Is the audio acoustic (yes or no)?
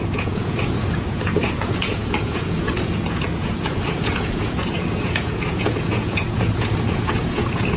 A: no